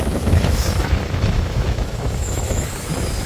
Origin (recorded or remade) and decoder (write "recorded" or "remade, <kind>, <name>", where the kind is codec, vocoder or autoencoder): remade, autoencoder, DAC-VAE